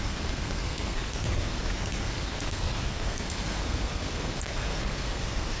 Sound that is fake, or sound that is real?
fake